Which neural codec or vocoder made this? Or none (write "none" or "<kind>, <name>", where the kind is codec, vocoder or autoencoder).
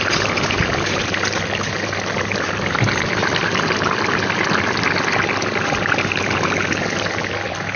none